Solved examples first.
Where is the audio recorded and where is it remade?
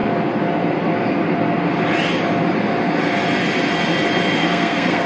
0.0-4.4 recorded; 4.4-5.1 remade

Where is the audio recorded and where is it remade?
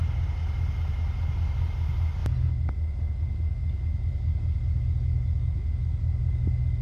0.0-6.8 recorded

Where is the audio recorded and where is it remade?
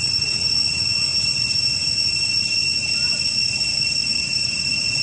0.0-1.1 remade; 1.1-4.1 recorded; 4.1-5.0 remade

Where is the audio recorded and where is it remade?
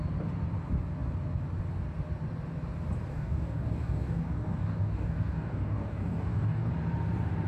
0.0-3.1 recorded; 3.1-6.7 remade; 6.7-7.5 recorded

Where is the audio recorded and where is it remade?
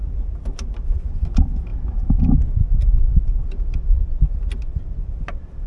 0.0-5.7 recorded